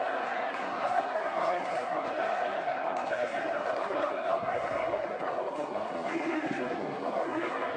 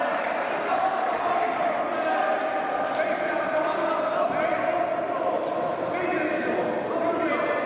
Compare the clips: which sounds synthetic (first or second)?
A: first